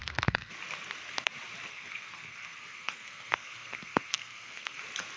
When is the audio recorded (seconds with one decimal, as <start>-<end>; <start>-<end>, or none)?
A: 0.5-1.7; 4.8-5.2

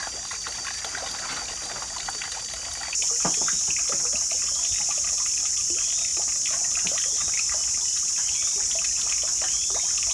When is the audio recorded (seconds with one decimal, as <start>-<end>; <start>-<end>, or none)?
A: 0.0-10.1

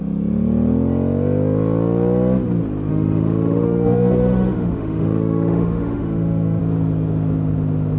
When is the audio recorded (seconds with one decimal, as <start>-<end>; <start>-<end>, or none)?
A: 0.0-2.9; 6.6-8.0

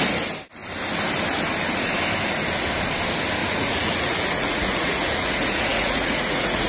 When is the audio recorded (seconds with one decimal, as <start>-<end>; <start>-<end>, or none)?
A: 0.0-3.4

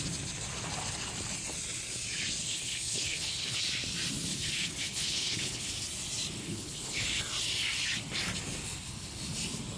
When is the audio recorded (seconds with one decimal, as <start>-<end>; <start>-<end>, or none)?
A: 0.0-2.4; 3.6-4.3; 5.7-6.4; 7.2-9.8

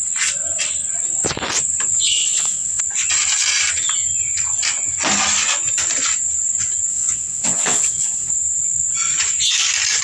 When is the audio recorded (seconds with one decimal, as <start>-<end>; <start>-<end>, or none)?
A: 0.0-2.2; 2.8-6.9; 8.3-10.0

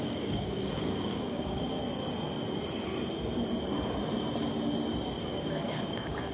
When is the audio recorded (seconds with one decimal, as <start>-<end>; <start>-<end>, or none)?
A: 1.8-5.2